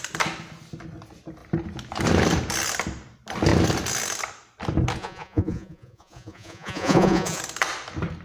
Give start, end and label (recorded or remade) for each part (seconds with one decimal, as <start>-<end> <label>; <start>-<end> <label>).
0.0-5.0 recorded; 5.0-7.4 remade; 7.4-8.2 recorded